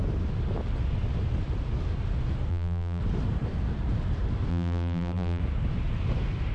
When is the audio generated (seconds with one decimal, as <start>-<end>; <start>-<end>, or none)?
2.5-3.0; 4.5-5.4